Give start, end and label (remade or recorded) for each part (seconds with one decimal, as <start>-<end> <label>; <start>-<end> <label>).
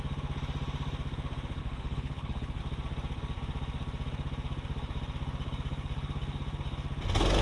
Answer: 0.0-1.6 recorded; 1.6-2.6 remade; 2.6-7.4 recorded